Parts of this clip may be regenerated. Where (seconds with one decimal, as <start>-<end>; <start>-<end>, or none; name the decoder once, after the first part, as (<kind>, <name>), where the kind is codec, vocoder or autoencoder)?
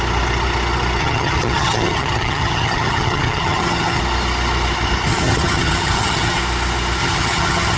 1.0-4.0 (vocoder, HiFi-GAN); 5.1-6.4; 7.0-7.8